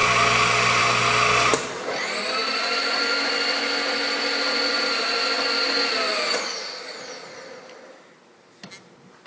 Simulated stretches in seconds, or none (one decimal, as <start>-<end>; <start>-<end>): none